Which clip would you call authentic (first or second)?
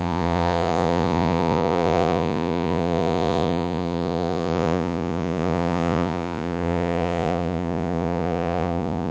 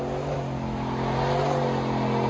second